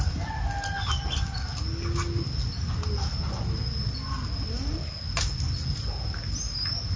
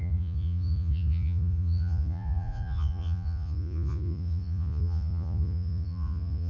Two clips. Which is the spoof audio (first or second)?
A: second